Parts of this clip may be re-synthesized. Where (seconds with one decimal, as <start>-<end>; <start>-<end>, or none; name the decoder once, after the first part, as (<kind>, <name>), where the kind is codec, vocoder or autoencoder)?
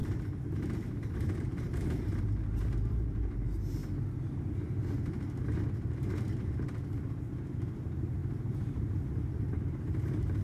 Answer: 0.0-3.8 (vocoder, BigVGAN v2); 5.8-10.4